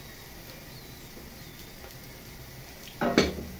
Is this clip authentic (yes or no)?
yes